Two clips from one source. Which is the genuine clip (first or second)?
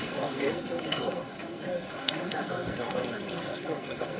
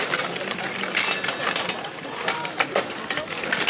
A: second